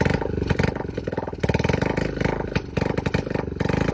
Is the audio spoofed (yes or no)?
no